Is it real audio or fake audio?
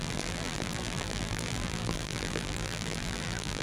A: fake